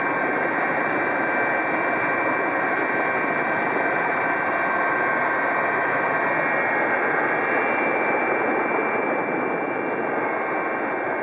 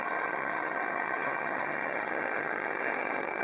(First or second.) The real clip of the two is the first